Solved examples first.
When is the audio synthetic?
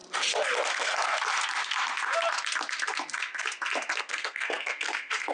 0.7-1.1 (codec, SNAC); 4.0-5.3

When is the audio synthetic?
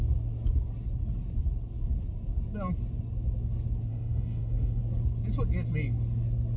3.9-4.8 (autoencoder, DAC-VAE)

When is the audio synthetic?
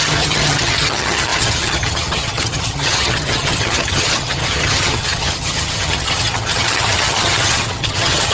0.0-8.3 (vocoder, HiFi-GAN)